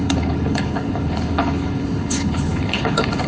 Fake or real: fake